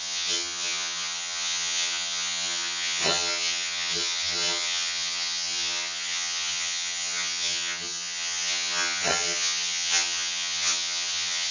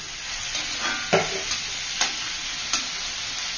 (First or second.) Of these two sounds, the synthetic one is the first